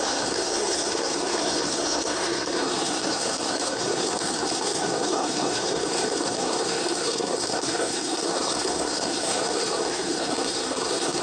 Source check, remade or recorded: remade